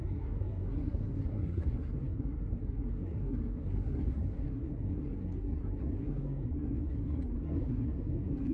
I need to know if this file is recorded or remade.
remade